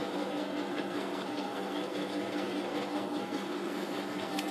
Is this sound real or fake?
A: fake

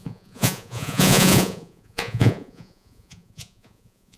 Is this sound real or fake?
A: fake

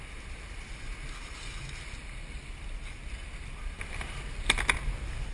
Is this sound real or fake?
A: real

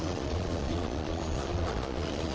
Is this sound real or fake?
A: fake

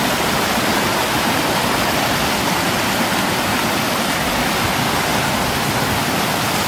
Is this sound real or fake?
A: real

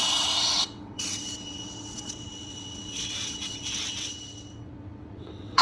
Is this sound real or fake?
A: fake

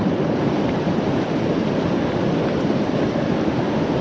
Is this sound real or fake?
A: real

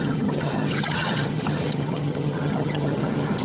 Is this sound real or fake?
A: fake